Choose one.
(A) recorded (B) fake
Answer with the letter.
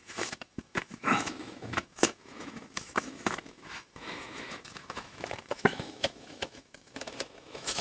B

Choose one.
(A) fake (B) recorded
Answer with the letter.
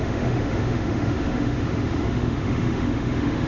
A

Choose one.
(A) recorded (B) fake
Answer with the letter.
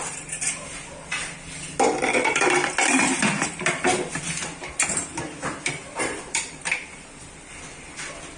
A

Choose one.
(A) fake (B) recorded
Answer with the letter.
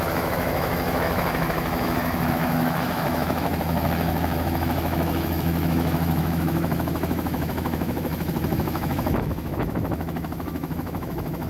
A